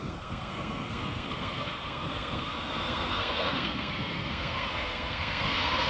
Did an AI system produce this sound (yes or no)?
yes